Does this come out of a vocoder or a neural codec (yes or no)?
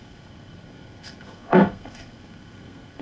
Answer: yes